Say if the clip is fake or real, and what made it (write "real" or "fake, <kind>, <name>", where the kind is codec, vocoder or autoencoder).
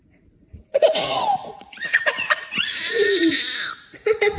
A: fake, vocoder, Vocos